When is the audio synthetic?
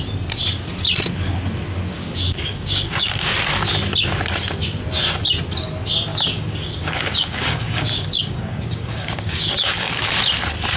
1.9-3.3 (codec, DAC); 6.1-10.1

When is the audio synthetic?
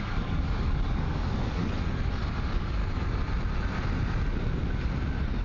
0.0-1.6 (codec, DAC); 2.4-2.8